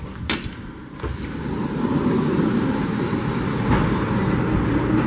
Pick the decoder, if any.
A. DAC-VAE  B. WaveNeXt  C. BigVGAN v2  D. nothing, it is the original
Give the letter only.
C